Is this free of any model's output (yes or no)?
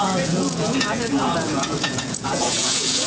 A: no